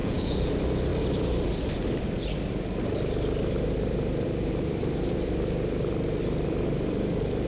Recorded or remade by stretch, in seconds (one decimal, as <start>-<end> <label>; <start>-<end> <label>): 0.0-0.5 remade; 0.5-7.5 recorded